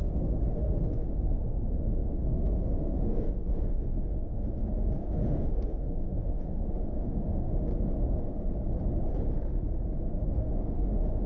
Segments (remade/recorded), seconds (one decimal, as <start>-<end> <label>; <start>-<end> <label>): 0.0-7.7 remade; 7.7-10.3 recorded; 10.3-11.3 remade